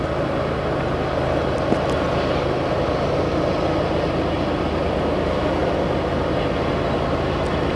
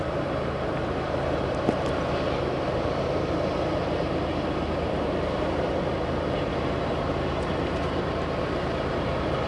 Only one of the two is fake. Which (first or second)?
second